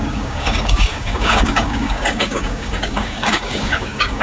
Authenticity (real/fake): fake